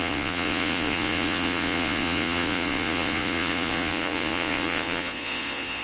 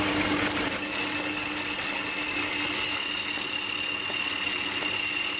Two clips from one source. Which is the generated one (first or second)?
first